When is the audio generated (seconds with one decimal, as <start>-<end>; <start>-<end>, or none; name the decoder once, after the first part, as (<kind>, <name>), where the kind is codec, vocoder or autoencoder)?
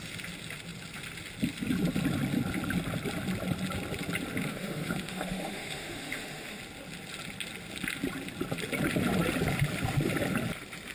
4.5-6.6 (autoencoder, DAC-VAE)